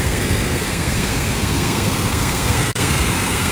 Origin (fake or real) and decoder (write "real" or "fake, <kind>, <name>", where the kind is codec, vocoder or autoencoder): fake, codec, SNAC